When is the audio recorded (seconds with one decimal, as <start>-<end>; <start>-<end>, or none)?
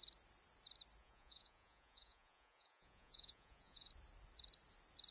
0.0-1.0; 3.9-5.1